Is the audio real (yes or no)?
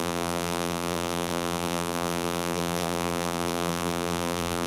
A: no